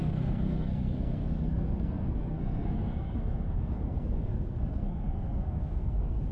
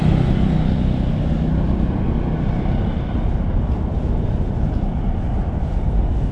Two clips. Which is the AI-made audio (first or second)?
first